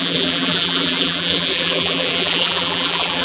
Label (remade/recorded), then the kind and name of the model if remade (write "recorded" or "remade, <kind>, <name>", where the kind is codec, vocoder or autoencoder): remade, vocoder, BigVGAN v2